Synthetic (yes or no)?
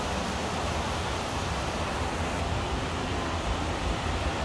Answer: yes